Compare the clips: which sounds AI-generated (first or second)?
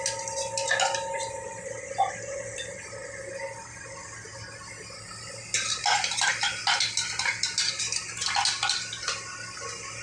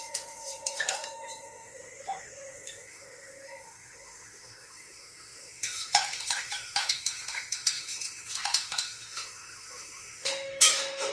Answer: second